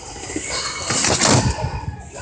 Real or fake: real